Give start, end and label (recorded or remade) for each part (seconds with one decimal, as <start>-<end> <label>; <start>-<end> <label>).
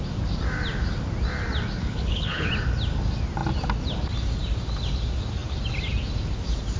0.0-1.8 recorded; 1.8-2.5 remade; 2.5-6.8 recorded